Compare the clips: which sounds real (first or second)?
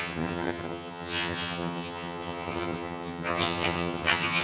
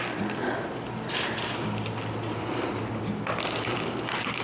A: second